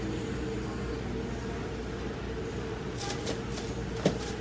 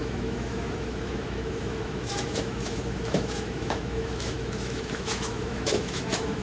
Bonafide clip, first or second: first